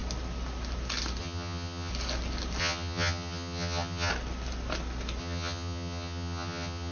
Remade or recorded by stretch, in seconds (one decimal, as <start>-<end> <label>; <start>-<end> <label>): 0.0-1.2 recorded; 1.2-1.9 remade; 1.9-2.6 recorded; 2.6-4.1 remade; 4.1-5.2 recorded; 5.2-6.9 remade